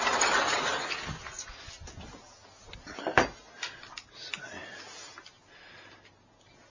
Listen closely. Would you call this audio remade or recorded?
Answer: recorded